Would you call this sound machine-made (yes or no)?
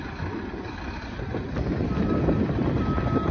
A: no